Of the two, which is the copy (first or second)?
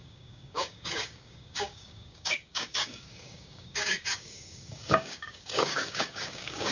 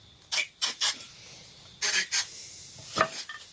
first